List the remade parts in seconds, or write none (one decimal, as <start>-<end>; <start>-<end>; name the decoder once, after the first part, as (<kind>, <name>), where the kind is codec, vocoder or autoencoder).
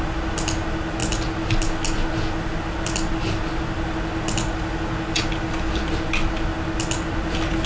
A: none